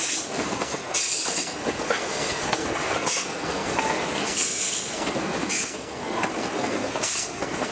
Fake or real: fake